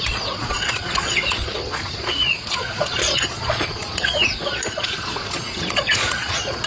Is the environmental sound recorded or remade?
remade